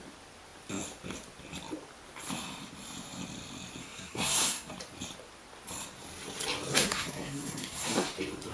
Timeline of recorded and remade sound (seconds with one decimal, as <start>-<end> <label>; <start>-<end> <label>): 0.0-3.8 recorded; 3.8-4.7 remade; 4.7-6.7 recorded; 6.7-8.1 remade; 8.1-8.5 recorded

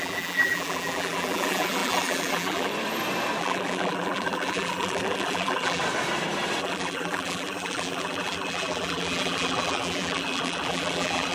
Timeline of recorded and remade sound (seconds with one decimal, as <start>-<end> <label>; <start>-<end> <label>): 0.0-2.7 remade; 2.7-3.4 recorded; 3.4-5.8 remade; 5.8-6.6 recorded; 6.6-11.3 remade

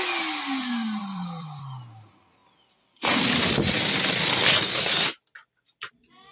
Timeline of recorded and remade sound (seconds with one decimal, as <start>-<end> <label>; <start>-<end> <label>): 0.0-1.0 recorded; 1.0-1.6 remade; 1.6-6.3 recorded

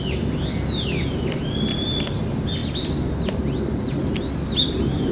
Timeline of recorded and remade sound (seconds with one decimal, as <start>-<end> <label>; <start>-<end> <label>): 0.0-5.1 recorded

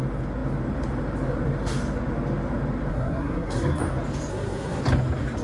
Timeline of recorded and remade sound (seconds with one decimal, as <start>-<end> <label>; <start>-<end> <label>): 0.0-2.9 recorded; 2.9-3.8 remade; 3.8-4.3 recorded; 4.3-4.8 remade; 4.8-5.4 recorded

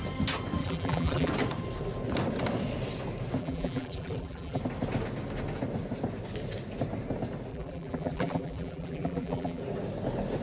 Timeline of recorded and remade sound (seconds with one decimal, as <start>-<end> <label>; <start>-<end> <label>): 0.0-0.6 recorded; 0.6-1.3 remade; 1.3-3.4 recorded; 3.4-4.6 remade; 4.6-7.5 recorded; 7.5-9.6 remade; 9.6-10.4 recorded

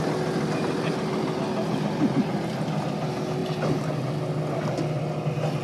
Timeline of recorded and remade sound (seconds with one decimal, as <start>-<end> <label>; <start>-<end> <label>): 0.0-5.6 recorded

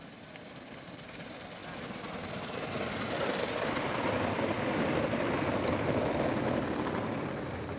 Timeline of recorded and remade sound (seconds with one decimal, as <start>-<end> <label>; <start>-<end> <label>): 0.0-7.8 recorded